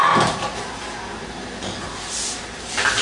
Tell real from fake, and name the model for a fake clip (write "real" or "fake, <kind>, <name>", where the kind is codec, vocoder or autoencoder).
real